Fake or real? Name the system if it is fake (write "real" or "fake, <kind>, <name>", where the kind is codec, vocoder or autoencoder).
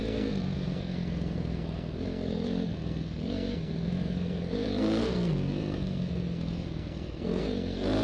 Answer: fake, codec, SNAC